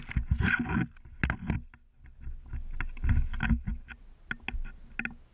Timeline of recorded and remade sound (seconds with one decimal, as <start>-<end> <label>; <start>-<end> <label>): 0.0-5.3 recorded